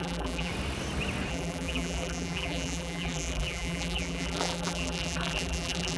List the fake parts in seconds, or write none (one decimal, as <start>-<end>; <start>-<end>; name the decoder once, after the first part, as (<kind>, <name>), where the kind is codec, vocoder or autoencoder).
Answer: 0.0-0.5 (vocoder, BigVGAN v2); 1.3-6.0